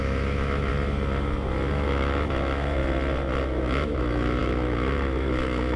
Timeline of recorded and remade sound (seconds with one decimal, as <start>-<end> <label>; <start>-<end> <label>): 0.0-0.7 remade; 0.7-1.7 recorded; 1.7-2.8 remade; 2.8-3.4 recorded; 3.4-5.8 remade